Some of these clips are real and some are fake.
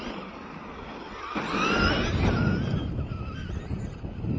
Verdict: real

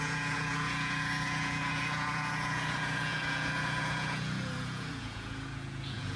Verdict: fake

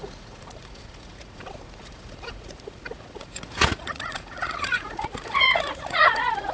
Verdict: fake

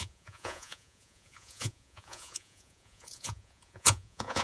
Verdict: fake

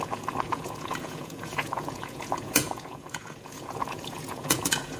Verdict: fake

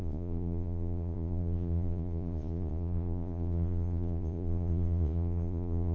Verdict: fake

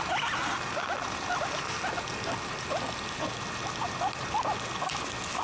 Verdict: real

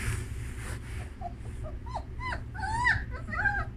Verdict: real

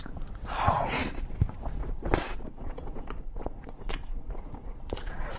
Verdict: fake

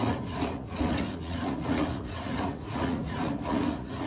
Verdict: fake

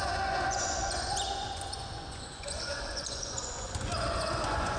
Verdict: fake